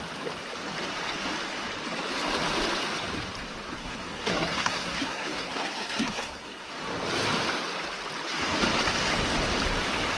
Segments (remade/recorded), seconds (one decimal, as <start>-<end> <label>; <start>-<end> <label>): 0.0-3.8 recorded; 3.8-6.7 remade; 6.7-10.2 recorded